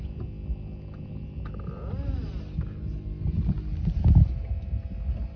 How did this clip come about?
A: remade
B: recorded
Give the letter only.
B